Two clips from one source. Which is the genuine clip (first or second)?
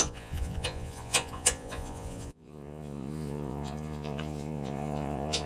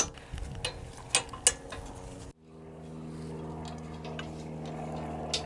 second